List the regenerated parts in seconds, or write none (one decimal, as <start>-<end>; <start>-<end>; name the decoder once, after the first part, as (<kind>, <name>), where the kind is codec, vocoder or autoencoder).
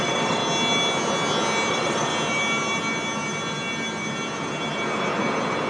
0.0-0.4 (vocoder, WaveNeXt); 1.7-2.1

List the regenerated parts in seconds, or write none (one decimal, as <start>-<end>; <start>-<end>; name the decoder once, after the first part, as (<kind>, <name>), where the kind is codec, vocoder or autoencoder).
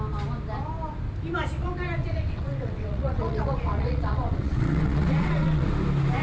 2.0-5.7 (vocoder, WaveNeXt)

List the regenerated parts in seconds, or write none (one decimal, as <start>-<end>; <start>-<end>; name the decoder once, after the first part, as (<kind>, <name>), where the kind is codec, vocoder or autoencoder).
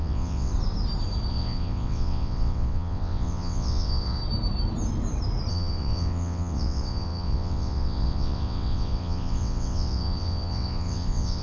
0.0-0.5 (vocoder, WaveNeXt); 1.3-4.2; 5.5-11.4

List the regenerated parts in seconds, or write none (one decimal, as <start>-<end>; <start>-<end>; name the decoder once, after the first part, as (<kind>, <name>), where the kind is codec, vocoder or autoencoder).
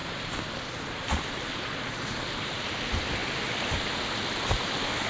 none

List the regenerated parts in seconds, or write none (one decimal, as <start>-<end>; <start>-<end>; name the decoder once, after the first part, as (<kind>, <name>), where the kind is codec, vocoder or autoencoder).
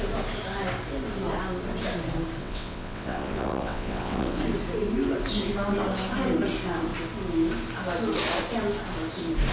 2.4-4.4 (vocoder, WaveNeXt)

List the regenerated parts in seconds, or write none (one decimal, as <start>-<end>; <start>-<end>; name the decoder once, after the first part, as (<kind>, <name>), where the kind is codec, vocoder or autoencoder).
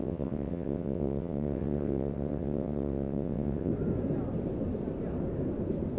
0.0-3.7 (vocoder, WaveNeXt)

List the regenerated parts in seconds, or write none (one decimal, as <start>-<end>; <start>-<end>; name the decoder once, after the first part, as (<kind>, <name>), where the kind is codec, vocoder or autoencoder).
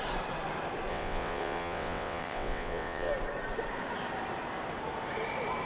0.9-3.1 (vocoder, WaveNeXt)